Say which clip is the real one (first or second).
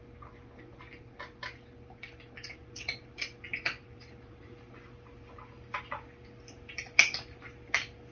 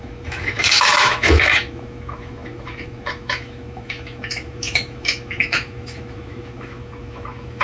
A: first